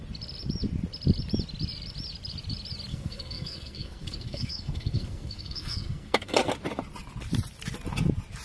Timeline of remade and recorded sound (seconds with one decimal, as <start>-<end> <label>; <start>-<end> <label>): 0.0-2.9 recorded; 2.9-6.5 remade; 6.5-8.4 recorded